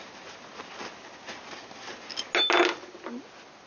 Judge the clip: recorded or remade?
recorded